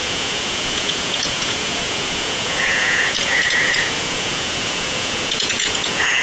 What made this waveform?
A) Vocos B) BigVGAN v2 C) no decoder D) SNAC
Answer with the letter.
A